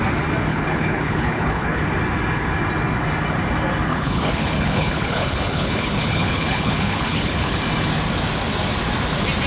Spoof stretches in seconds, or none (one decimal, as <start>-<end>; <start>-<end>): 0.5-1.8; 3.9-7.6